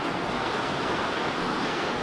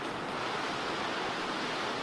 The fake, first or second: first